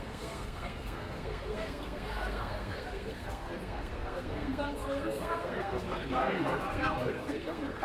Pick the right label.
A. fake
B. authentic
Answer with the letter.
A